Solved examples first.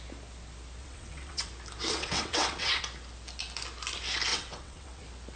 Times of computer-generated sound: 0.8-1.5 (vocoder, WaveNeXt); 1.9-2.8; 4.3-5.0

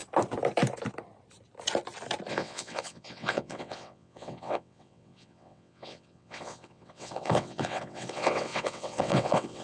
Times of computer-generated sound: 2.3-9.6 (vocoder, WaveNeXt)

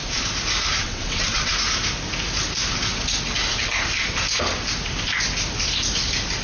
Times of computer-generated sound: 0.8-1.5 (vocoder, WaveNeXt)